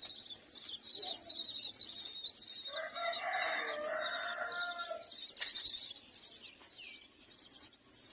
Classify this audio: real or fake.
real